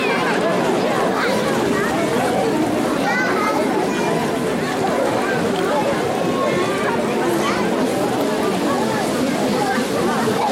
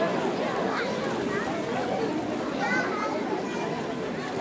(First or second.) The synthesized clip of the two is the second